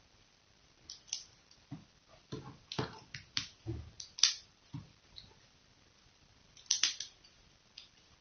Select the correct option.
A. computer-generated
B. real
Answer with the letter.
B